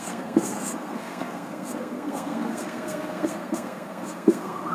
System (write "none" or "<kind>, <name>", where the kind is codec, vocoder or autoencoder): codec, SNAC